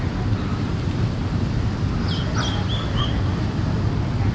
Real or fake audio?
real